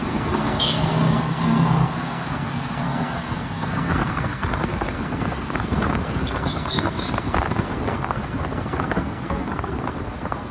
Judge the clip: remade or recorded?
remade